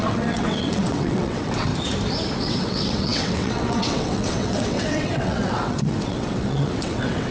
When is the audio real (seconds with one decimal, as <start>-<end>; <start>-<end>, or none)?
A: 1.7-2.4